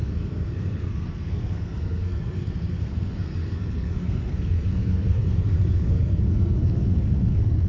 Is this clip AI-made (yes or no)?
yes